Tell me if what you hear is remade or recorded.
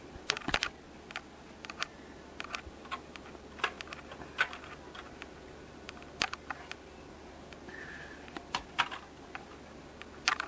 recorded